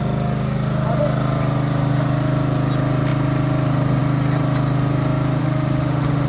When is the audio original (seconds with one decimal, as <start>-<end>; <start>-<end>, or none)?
0.0-5.4